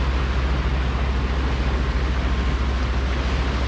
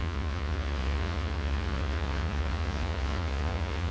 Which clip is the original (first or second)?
first